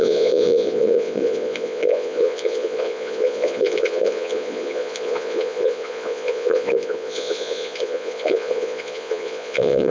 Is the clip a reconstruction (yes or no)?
yes